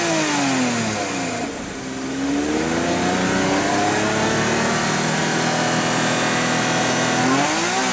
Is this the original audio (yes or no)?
yes